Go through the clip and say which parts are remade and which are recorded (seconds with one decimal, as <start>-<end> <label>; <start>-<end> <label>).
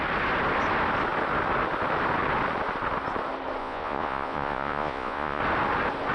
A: 0.0-3.6 recorded; 3.6-5.4 remade; 5.4-6.1 recorded